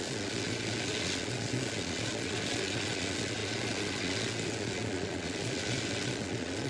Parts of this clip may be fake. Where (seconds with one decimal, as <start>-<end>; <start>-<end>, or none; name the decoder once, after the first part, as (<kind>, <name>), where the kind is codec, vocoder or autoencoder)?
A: 0.0-6.7 (vocoder, Vocos)